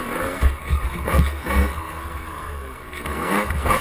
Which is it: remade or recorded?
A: remade